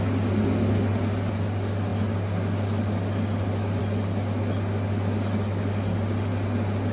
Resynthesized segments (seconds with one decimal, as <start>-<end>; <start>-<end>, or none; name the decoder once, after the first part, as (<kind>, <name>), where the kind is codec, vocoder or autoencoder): none